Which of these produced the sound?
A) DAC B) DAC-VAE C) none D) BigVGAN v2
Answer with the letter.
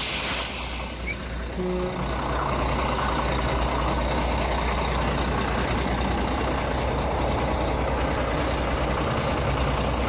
C